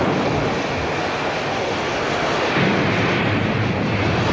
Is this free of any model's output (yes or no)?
yes